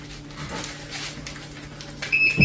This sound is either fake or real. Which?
real